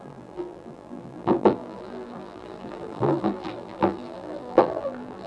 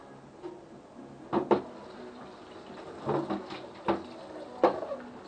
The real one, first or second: second